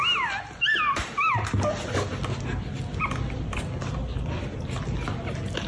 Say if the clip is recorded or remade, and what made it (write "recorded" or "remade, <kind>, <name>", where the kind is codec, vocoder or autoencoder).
recorded